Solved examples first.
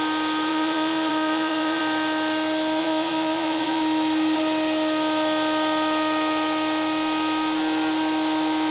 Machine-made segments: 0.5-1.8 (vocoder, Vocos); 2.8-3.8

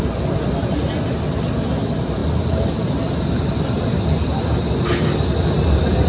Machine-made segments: none

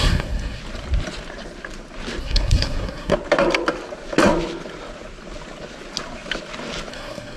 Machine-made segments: 0.0-0.6 (codec, SNAC); 2.2-3.1; 6.9-7.4

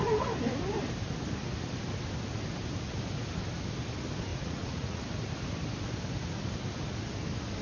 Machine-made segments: 4.3-5.0 (vocoder, Vocos)